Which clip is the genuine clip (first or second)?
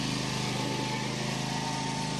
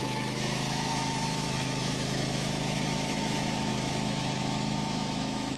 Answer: first